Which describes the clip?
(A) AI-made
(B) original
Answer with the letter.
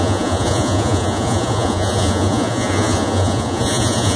A